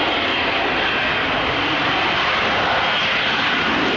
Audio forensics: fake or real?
real